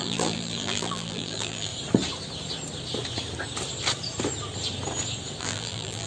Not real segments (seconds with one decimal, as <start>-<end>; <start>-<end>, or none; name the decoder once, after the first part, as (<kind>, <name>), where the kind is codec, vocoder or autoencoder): 0.0-1.7 (vocoder, BigVGAN v2); 5.4-6.1